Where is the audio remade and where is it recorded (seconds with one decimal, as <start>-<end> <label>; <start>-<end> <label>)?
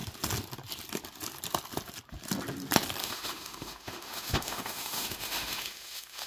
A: 0.0-3.0 recorded; 3.0-6.3 remade